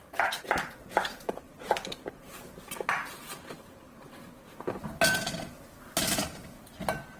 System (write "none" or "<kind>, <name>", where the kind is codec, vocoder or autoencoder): none